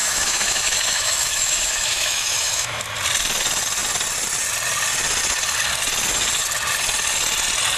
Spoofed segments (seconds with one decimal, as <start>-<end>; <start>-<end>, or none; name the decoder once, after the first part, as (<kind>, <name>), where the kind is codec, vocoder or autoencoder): 0.0-2.8 (autoencoder, DAC-VAE)